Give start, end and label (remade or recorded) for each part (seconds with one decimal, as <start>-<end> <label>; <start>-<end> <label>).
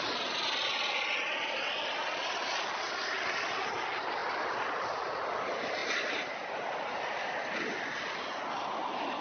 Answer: 0.0-9.2 recorded